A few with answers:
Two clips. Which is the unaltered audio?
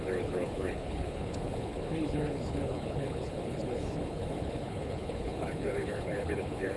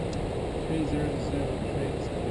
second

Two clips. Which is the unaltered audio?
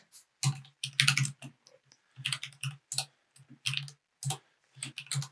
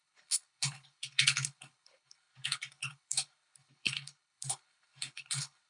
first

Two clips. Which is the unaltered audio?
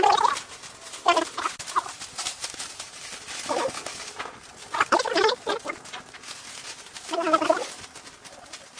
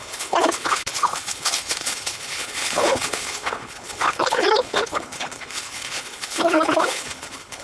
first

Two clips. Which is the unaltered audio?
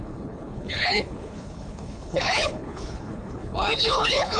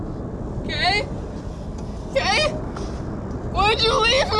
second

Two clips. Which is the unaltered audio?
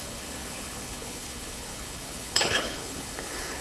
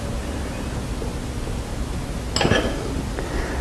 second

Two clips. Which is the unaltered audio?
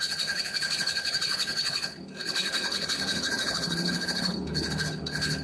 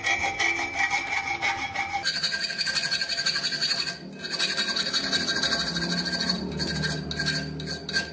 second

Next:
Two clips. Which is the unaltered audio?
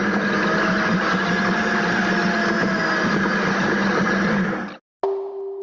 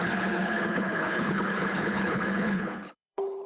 first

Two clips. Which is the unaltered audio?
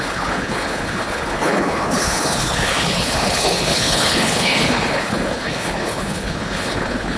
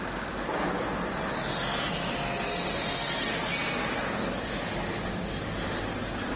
second